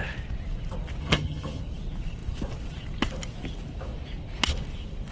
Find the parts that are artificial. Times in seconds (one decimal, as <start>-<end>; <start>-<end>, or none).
1.0-1.6